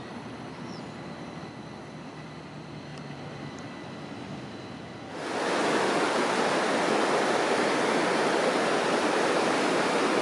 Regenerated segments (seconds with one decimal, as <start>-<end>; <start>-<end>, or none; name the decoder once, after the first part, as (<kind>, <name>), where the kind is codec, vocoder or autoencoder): none